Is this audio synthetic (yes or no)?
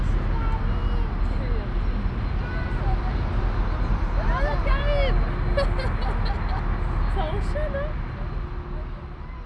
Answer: no